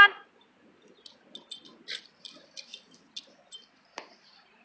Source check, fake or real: real